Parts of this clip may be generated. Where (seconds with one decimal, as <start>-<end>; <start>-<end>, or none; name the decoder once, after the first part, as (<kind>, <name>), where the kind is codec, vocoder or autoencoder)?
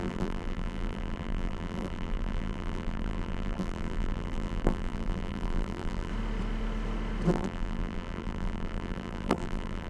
0.0-6.1 (vocoder, BigVGAN v2); 7.3-9.9